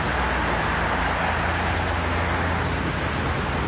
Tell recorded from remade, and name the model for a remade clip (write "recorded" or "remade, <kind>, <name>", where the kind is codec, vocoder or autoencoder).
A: recorded